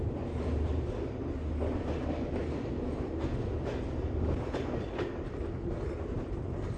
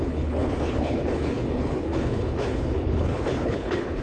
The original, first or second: first